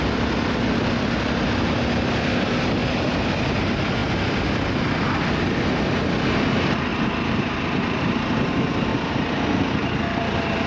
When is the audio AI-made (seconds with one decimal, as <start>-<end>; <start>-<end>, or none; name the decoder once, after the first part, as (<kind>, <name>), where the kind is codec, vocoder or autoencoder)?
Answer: 2.8-3.6 (vocoder, BigVGAN v2); 6.9-8.5; 8.9-9.6